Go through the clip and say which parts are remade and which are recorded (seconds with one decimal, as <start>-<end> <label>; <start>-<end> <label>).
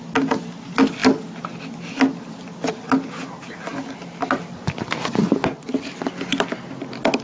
0.0-7.2 recorded